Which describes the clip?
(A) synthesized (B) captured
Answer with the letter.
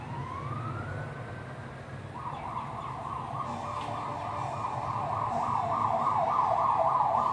B